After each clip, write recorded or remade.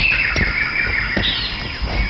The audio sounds recorded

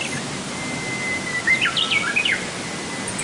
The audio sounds recorded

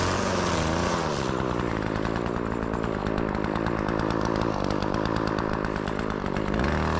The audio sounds recorded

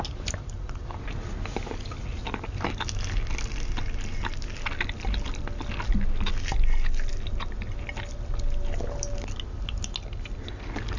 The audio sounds recorded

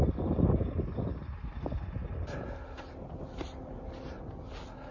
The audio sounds recorded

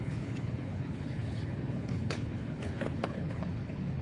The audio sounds remade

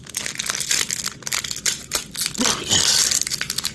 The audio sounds recorded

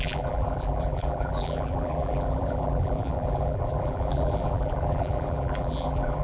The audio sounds remade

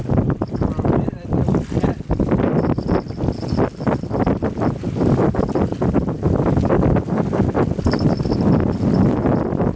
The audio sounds recorded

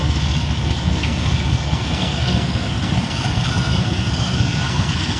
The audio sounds remade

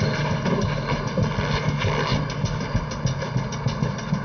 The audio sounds recorded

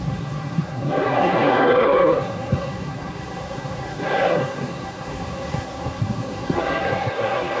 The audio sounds remade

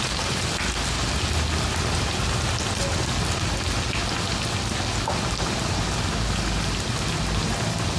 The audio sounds recorded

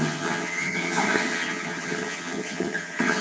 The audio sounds remade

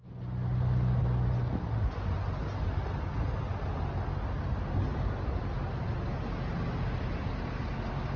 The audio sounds recorded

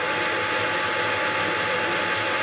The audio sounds recorded